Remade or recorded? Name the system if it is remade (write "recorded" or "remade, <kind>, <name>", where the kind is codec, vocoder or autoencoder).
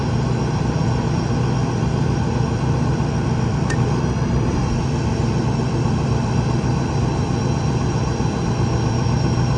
remade, vocoder, BigVGAN v2